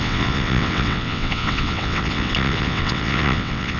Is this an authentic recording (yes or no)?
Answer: no